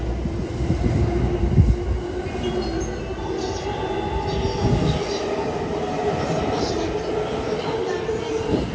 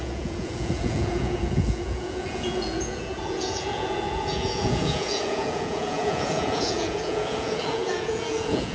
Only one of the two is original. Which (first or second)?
first